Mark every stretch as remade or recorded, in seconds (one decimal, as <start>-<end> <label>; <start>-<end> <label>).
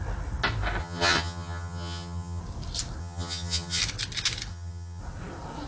0.0-0.8 recorded; 0.8-2.4 remade; 2.4-3.0 recorded; 3.0-3.8 remade; 3.8-4.5 recorded; 4.5-5.0 remade; 5.0-5.7 recorded